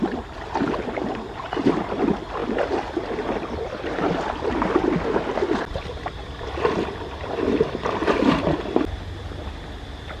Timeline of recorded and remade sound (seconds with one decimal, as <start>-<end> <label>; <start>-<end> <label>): 0.0-10.2 recorded